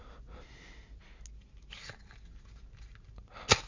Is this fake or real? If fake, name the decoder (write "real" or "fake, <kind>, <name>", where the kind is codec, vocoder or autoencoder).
real